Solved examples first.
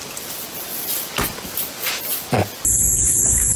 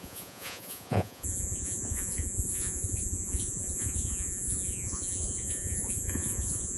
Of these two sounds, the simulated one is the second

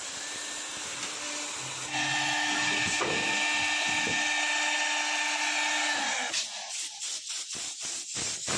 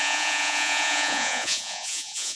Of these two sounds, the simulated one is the second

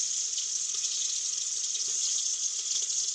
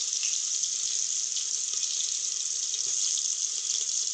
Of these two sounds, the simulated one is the first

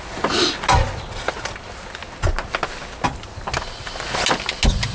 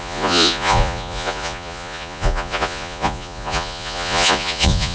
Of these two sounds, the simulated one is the second